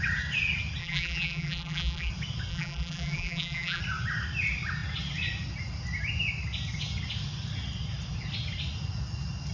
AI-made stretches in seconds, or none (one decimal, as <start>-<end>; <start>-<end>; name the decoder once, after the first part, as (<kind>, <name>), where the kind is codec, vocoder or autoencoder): 0.8-2.1 (vocoder, BigVGAN v2); 2.5-3.8